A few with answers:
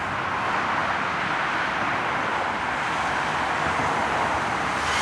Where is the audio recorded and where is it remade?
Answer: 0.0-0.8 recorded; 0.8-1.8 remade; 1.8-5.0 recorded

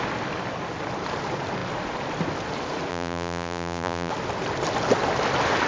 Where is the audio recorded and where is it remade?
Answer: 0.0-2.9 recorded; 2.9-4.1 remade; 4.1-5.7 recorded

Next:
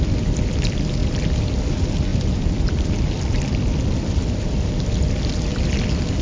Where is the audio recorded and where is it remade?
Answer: 0.0-1.0 recorded; 1.0-1.7 remade; 1.7-2.1 recorded; 2.1-4.7 remade; 4.7-6.2 recorded

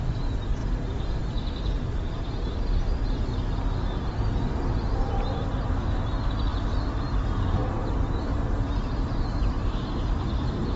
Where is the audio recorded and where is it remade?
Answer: 0.0-0.6 remade; 0.6-1.2 recorded; 1.2-3.3 remade; 3.3-4.9 recorded; 4.9-10.8 remade